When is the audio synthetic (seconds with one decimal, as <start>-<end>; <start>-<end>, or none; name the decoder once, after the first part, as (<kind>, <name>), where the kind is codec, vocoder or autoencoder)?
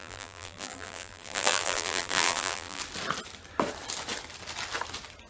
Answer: 0.0-2.8 (vocoder, BigVGAN v2)